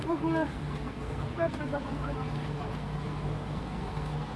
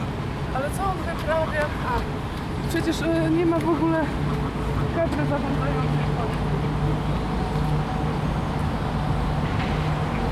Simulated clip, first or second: first